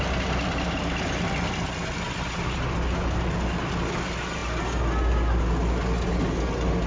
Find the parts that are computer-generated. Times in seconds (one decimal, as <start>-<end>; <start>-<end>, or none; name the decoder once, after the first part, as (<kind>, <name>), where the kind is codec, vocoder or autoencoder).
none